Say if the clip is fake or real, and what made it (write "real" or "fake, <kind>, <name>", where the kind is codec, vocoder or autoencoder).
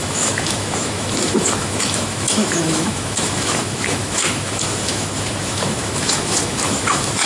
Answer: fake, autoencoder, DAC-VAE